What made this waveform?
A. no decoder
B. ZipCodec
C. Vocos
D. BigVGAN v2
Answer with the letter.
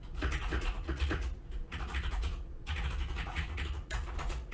C